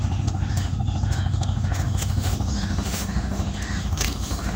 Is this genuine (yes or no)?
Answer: no